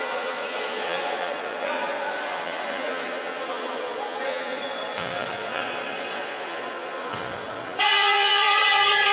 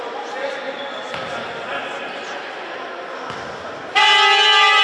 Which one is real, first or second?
second